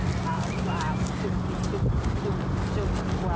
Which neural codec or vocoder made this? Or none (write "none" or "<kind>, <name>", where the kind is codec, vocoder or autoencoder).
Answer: none